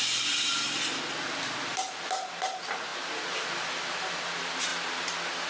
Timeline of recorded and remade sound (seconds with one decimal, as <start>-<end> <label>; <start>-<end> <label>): 0.0-5.5 recorded